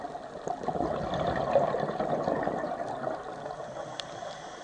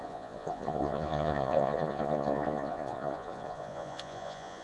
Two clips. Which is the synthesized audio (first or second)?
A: second